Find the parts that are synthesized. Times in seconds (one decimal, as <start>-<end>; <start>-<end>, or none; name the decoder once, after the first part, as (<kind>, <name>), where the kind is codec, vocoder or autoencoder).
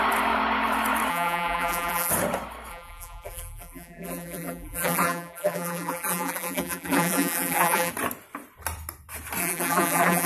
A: 1.1-2.1 (vocoder, BigVGAN v2); 2.7-7.9; 9.4-10.3